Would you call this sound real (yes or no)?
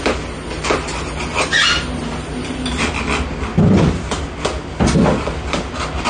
yes